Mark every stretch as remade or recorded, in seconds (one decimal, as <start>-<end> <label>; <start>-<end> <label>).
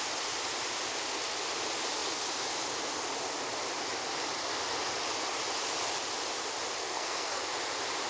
0.0-6.8 recorded; 6.8-7.4 remade; 7.4-8.1 recorded